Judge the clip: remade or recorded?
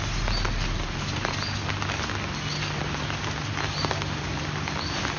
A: recorded